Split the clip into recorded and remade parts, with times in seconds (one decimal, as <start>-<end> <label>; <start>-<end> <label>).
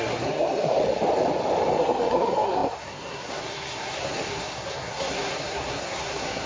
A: 0.0-0.8 remade; 0.8-1.8 recorded; 1.8-6.5 remade